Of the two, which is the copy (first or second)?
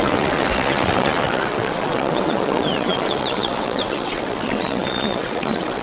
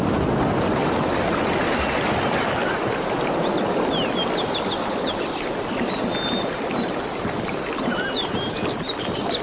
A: first